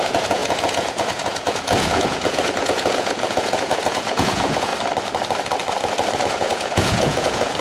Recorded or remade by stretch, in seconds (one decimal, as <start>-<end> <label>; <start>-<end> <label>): 0.0-4.7 remade; 4.7-6.3 recorded; 6.3-7.6 remade